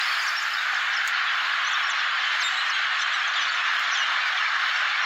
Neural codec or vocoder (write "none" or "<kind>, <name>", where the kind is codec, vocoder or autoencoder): none